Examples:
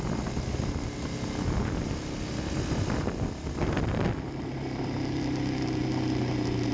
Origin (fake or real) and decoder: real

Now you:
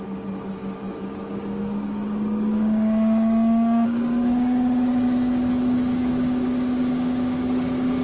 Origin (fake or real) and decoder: fake, codec, DAC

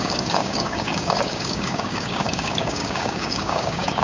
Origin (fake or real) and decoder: fake, codec, DAC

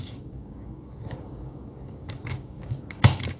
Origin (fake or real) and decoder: fake, codec, DAC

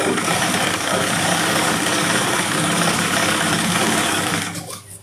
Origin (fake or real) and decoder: fake, codec, DAC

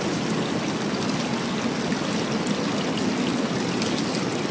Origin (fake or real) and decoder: real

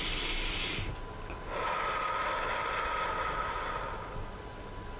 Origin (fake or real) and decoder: real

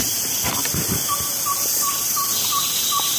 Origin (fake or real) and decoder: real